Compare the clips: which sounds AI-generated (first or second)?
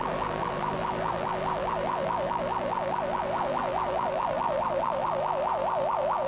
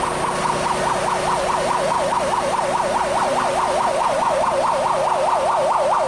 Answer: first